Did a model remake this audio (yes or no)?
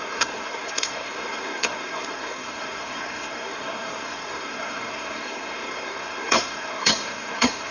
yes